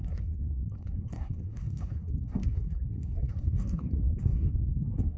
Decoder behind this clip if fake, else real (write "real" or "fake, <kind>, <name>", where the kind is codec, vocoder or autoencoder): fake, codec, SNAC